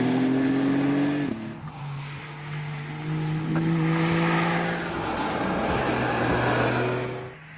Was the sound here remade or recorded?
recorded